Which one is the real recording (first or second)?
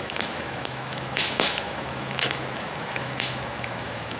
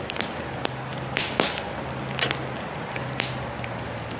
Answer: second